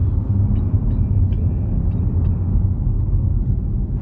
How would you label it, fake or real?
real